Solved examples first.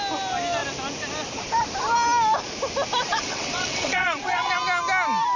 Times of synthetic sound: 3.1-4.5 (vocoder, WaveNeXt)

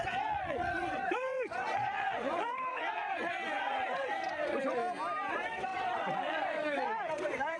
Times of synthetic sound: 0.0-4.8 (vocoder, WaveNeXt); 5.3-7.6

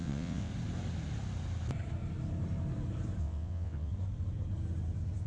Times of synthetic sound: 0.0-0.5 (vocoder, WaveNeXt); 3.2-3.9